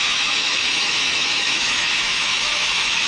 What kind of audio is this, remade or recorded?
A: remade